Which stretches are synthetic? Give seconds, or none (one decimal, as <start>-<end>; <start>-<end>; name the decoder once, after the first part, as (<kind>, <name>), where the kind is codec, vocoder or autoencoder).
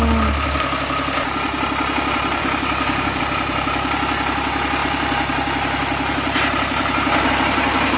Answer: 2.4-3.2 (codec, DAC)